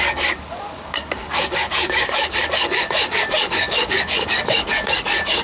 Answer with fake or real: fake